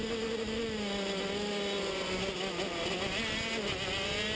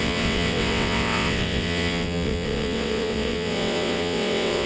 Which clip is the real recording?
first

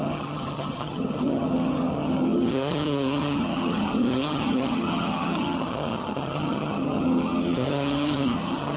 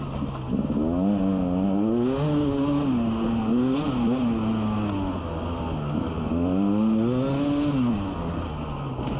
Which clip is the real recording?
second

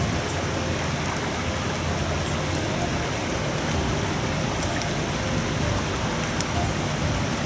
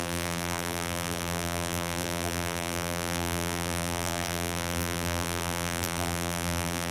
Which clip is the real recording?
first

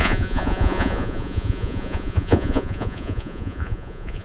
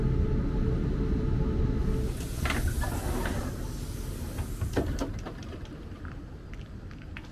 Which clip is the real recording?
second